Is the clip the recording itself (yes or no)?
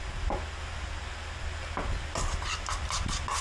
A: yes